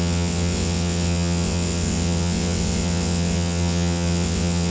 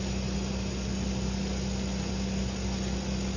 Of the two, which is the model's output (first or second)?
first